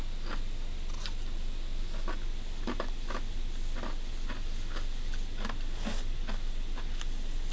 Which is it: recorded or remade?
recorded